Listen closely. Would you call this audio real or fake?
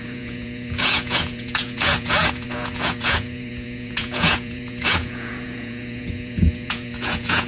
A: fake